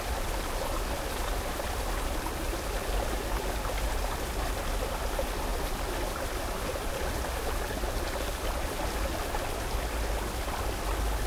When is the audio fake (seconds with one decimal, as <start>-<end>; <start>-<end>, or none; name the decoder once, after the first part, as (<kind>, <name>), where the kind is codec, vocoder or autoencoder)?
5.5-6.9 (vocoder, BigVGAN v2)